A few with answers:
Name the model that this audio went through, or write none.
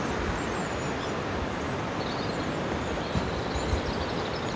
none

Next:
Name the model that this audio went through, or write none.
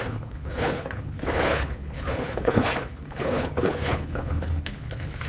codec, HILCodec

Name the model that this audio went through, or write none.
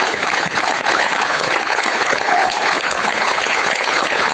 codec, HILCodec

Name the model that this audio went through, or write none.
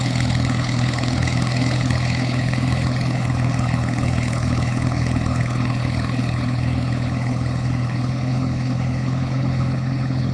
codec, HILCodec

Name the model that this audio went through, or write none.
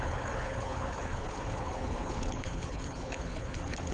codec, HILCodec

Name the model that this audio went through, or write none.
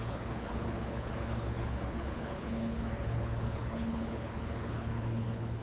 codec, HILCodec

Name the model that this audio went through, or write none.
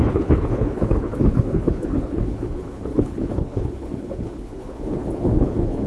codec, HILCodec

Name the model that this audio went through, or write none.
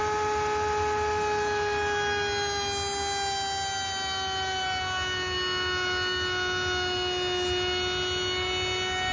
none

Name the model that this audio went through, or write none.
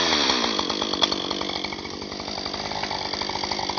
none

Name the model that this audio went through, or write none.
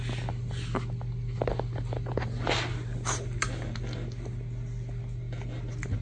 none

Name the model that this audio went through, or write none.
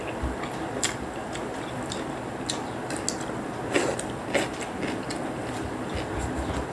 none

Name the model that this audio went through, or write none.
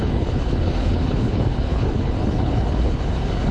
codec, HILCodec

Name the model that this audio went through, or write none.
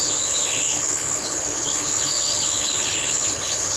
codec, HILCodec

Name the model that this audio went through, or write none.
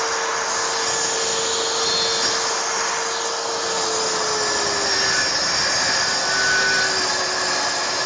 none